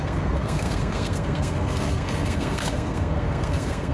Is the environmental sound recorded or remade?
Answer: remade